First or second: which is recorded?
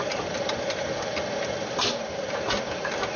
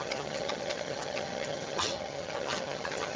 first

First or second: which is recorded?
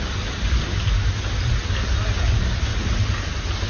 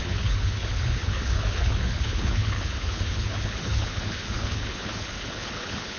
first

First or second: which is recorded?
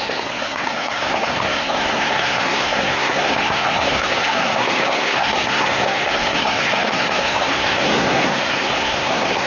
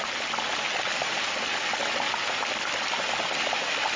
second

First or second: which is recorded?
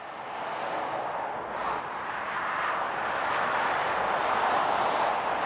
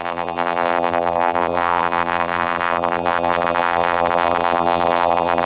first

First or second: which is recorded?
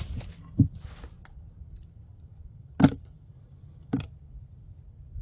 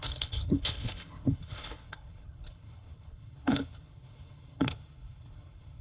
first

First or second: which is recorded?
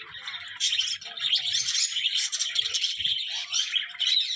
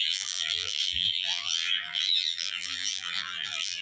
first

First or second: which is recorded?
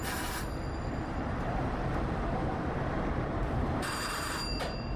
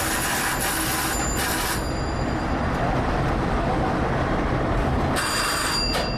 second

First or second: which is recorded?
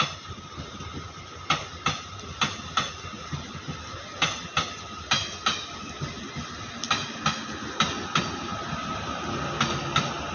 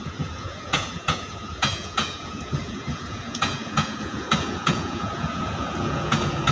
first